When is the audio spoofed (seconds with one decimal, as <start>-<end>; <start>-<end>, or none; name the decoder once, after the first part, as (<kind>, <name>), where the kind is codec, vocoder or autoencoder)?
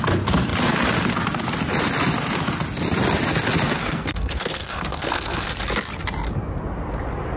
3.8-5.5 (codec, SNAC)